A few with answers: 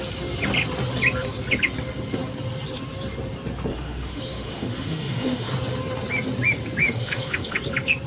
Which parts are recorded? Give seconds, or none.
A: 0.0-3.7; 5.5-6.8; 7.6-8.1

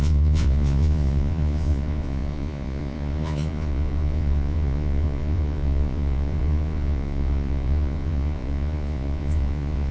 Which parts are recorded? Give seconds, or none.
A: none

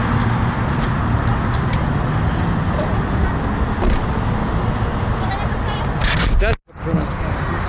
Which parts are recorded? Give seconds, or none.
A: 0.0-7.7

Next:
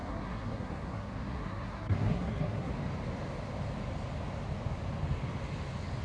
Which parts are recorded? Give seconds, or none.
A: 2.7-6.0